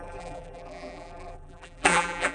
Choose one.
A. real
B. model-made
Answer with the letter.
B